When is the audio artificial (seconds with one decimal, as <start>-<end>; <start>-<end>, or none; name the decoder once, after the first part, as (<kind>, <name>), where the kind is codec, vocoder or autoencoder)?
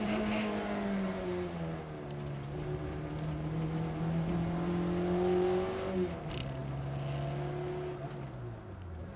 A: none